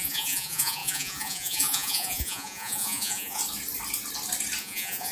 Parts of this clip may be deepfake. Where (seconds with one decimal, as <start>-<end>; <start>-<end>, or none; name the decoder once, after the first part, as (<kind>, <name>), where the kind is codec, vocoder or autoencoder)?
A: 0.0-3.4 (vocoder, Vocos); 4.6-5.1